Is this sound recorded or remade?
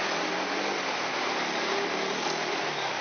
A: recorded